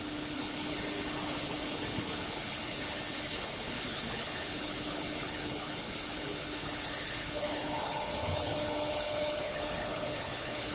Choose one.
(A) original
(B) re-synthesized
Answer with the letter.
B